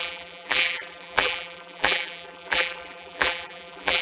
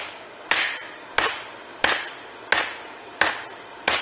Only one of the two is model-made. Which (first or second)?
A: first